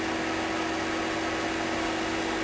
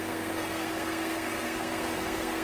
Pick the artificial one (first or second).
second